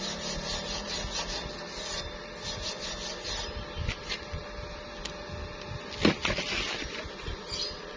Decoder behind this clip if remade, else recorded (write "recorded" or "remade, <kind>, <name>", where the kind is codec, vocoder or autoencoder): recorded